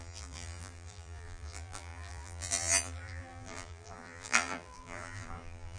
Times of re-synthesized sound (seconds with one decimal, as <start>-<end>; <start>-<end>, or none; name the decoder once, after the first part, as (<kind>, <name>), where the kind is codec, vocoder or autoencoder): 0.0-5.8 (vocoder, BigVGAN v2)